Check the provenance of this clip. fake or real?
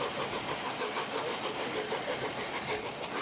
real